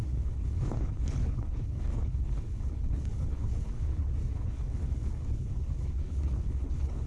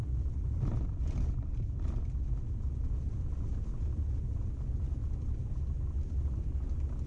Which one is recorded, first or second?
second